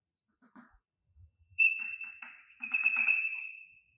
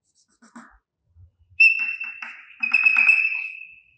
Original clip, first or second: second